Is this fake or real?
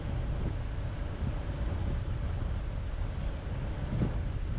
real